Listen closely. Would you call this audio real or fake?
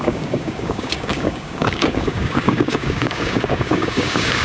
fake